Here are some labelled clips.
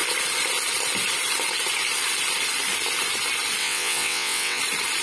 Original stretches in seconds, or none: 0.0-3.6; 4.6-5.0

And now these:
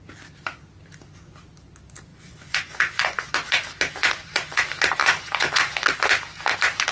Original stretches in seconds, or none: 0.0-2.1; 3.3-4.0; 4.6-5.0; 5.9-6.9

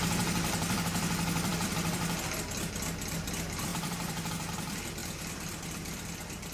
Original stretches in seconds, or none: 0.0-3.7; 4.3-5.0; 6.1-6.5

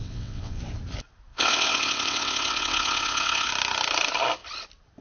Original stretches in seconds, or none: 0.6-1.3; 3.5-5.0

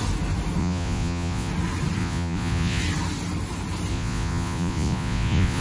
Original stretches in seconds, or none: 0.0-0.6; 1.5-2.0; 2.8-3.9

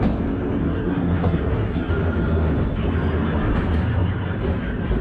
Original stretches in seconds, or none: 0.0-0.6; 1.9-5.0

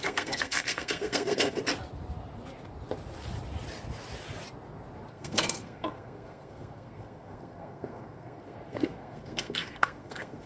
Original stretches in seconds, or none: 1.6-5.1

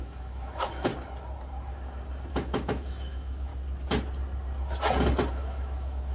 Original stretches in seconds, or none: 0.9-2.3; 3.5-5.3